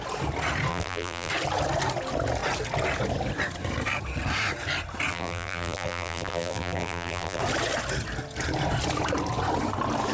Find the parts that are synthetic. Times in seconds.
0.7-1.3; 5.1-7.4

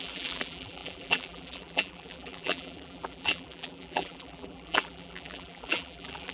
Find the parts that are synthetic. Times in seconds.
0.0-6.3

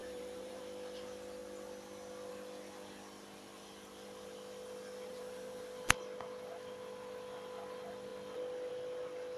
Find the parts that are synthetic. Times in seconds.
0.0-0.6; 5.1-5.6

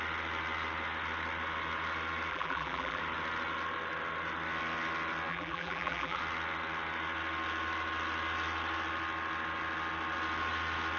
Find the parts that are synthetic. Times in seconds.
2.3-3.0; 5.3-6.2

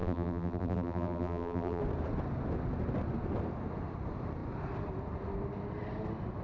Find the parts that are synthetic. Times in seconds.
0.0-1.8